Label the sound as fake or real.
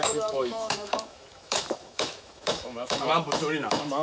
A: fake